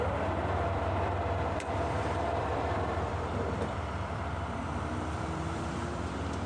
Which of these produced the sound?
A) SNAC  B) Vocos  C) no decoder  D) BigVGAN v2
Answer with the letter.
D